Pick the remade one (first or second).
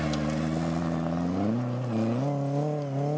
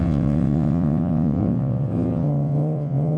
second